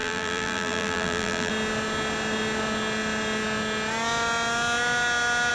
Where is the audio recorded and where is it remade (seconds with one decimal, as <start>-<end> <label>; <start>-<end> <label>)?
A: 0.0-1.5 remade; 1.5-5.5 recorded